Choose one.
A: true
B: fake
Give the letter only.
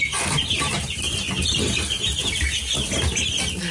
A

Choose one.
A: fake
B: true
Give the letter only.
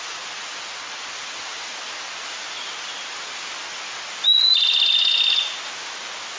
B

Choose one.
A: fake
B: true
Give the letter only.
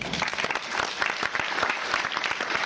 B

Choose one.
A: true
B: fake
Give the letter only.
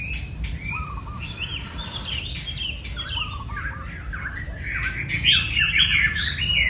A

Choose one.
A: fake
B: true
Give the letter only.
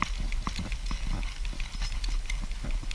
B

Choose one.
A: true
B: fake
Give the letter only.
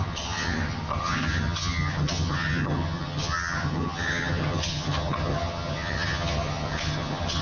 B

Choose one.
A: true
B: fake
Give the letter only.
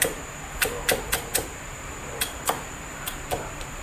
B